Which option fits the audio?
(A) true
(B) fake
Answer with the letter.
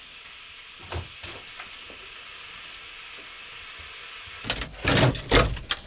A